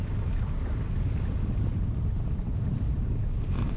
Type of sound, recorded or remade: recorded